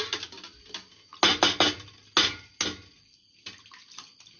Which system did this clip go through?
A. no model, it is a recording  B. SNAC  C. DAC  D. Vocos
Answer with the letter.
A